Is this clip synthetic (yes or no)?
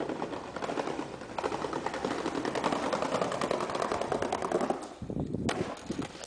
no